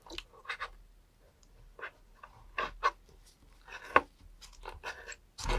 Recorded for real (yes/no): yes